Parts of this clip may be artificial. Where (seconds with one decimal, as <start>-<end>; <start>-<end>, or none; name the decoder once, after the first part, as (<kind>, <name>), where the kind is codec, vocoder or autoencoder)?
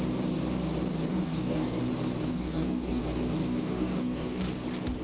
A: 1.1-1.8 (codec, DAC); 2.3-3.0; 3.4-4.4